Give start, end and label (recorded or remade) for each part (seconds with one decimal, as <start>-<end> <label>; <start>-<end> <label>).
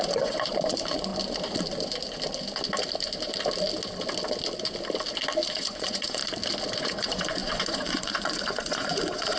0.0-1.1 remade; 1.1-5.5 recorded; 5.5-6.2 remade; 6.2-6.8 recorded; 6.8-9.4 remade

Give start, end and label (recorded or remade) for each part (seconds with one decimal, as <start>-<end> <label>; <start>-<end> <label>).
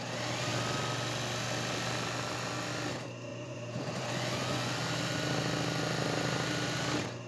0.0-3.3 recorded; 3.3-4.7 remade; 4.7-7.3 recorded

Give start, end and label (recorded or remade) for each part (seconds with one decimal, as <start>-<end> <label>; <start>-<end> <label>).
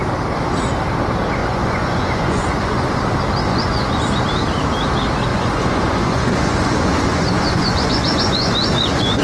0.0-1.4 recorded; 1.4-3.0 remade; 3.0-3.5 recorded; 3.5-4.0 remade; 4.0-5.3 recorded; 5.3-9.2 remade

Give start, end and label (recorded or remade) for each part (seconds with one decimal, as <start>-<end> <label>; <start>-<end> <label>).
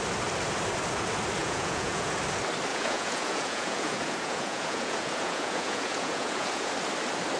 0.0-1.4 recorded; 1.4-2.1 remade; 2.1-2.7 recorded; 2.7-6.7 remade; 6.7-7.4 recorded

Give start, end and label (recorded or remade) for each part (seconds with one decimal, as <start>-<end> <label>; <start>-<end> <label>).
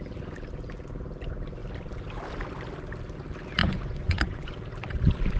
0.0-3.6 recorded; 3.6-4.5 remade; 4.5-5.4 recorded